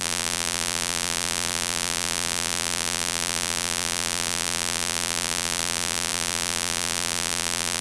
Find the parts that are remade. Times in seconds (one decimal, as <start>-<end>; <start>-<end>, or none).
0.0-7.8